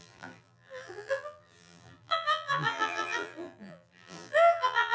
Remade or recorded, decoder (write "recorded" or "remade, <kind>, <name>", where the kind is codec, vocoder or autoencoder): remade, vocoder, BigVGAN v2